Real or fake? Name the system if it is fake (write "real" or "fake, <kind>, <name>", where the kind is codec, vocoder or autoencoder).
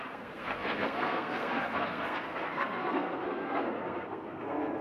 fake, codec, SNAC